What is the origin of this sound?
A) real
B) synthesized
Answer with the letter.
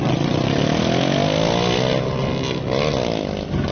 A